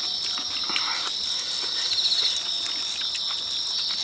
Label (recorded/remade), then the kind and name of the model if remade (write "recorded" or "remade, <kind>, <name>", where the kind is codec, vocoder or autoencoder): recorded